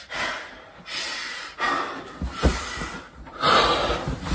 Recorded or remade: recorded